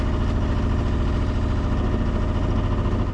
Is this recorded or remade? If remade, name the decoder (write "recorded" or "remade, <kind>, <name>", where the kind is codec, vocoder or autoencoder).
recorded